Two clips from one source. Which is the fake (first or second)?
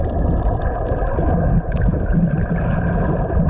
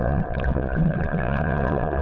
second